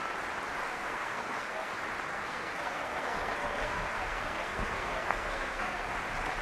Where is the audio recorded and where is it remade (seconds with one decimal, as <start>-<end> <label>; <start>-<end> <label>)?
0.0-0.6 recorded; 0.6-1.7 remade; 1.7-2.1 recorded; 2.1-5.9 remade; 5.9-6.4 recorded